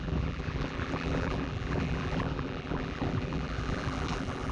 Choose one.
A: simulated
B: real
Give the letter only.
A